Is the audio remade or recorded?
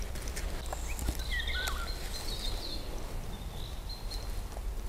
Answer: recorded